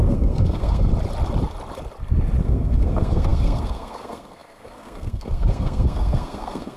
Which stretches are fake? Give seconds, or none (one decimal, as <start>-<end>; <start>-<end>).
0.0-0.9; 2.4-6.8